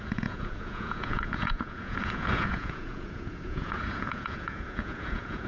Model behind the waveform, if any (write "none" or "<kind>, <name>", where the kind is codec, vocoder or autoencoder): vocoder, Vocos